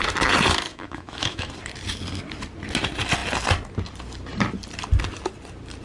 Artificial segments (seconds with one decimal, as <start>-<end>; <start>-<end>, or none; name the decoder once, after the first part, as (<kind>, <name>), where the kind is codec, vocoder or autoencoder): 0.7-1.5 (autoencoder, DAC-VAE)